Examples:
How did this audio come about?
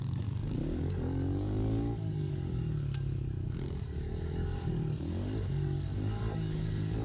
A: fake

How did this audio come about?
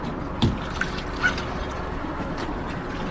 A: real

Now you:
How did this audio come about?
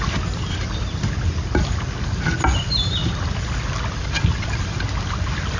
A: real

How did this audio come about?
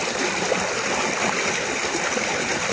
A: real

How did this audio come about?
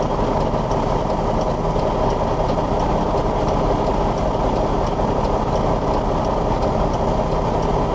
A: real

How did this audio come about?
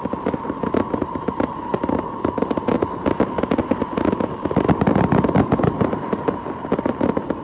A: fake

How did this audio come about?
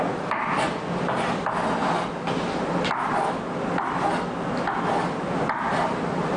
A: real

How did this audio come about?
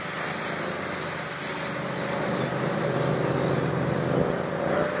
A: real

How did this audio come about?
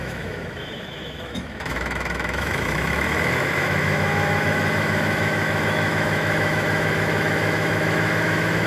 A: fake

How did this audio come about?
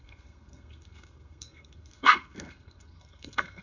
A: fake